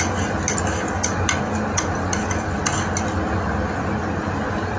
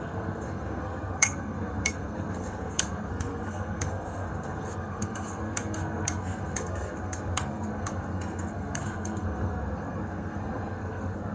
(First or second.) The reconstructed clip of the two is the second